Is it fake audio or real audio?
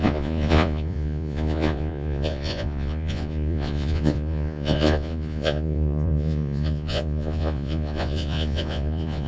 fake